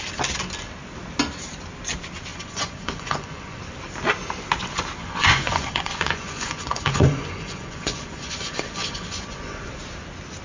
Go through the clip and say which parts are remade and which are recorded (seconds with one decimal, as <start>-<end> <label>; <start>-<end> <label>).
0.0-2.3 recorded; 2.3-3.6 remade; 3.6-5.0 recorded; 5.0-9.7 remade; 9.7-10.4 recorded